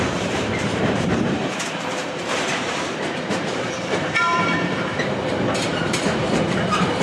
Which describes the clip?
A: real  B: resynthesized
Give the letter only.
B